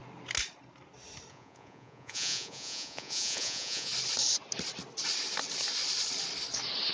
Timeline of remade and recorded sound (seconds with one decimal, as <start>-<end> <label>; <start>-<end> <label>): 0.0-1.3 recorded; 1.3-3.9 remade; 3.9-6.9 recorded